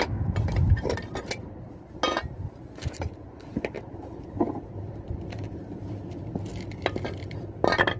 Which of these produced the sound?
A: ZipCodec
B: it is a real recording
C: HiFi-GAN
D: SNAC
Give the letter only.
B